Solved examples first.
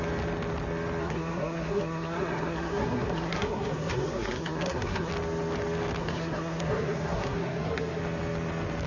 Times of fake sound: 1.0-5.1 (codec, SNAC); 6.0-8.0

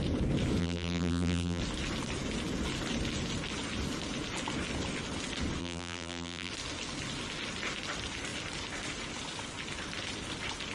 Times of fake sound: 0.6-1.6 (vocoder, BigVGAN v2); 5.6-6.5

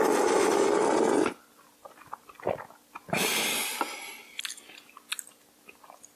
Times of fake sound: none

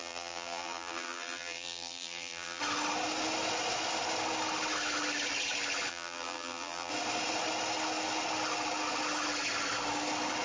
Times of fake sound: 0.0-2.6 (vocoder, BigVGAN v2); 5.9-6.9

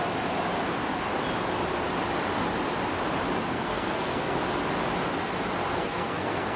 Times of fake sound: 3.5-4.4 (codec, SNAC); 5.7-6.6

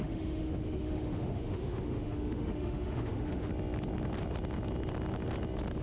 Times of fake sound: 0.0-3.5 (autoencoder, DAC-VAE)